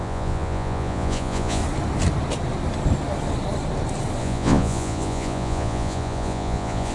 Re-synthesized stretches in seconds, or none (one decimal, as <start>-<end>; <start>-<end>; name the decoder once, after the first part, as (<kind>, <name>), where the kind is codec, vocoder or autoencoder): 0.0-1.6 (vocoder, Vocos); 4.2-6.9